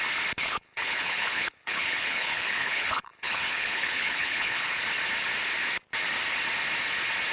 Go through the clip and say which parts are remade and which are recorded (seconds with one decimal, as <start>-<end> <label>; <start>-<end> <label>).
0.0-0.4 recorded; 0.4-4.8 remade; 4.8-7.3 recorded